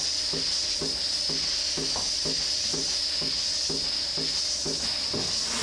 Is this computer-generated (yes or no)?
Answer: no